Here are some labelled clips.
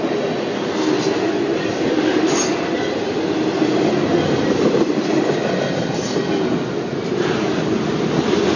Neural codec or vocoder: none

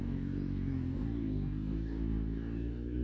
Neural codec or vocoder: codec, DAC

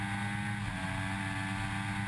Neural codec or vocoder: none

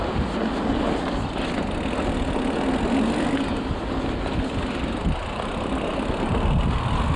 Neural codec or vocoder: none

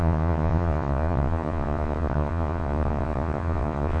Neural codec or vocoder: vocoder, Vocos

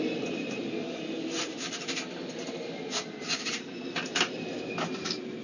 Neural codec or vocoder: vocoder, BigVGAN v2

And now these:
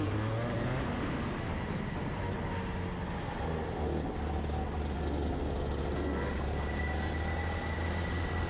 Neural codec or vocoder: none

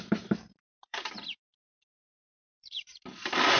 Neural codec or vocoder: vocoder, BigVGAN v2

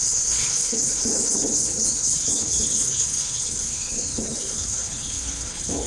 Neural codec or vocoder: codec, HILCodec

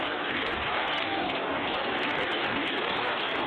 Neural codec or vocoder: codec, DAC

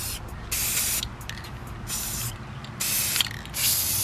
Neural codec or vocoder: none